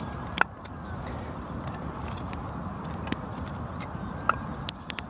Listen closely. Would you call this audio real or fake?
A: fake